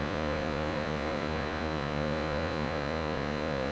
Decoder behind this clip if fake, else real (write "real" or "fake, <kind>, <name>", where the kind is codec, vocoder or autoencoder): fake, vocoder, Vocos